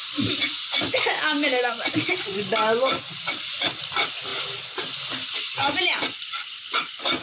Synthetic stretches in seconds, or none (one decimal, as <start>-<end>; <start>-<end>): none